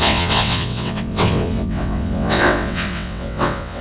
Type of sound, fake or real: fake